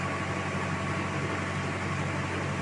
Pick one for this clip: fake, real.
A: real